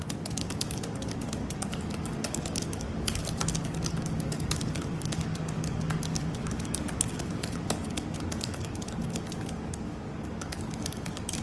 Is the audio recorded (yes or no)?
no